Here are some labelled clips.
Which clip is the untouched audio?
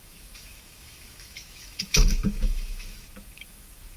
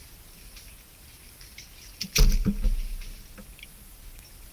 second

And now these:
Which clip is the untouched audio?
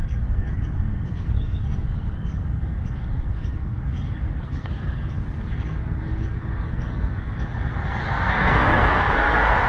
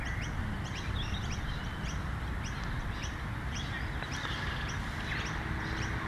second